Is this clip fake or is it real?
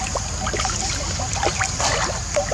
real